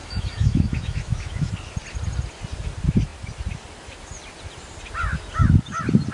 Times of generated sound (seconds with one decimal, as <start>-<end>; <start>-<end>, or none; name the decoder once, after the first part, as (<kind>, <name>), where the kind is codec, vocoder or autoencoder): 0.0-1.5 (autoencoder, DAC-VAE)